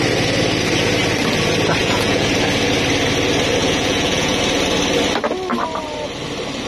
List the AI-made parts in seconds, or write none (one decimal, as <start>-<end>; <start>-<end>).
1.8-2.3; 3.6-4.4